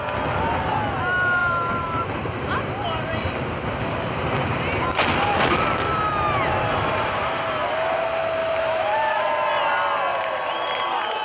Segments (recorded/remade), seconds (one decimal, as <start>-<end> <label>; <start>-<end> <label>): 0.0-1.4 recorded; 1.4-4.8 remade; 4.8-8.4 recorded; 8.4-9.2 remade; 9.2-10.1 recorded; 10.1-11.2 remade